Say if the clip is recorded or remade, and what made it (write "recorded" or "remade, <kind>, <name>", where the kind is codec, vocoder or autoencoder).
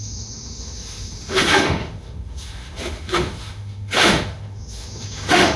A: remade, autoencoder, DAC-VAE